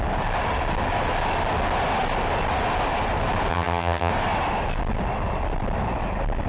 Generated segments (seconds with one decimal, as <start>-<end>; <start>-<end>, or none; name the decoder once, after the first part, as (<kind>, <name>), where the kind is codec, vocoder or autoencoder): 3.5-4.1 (vocoder, HiFi-GAN)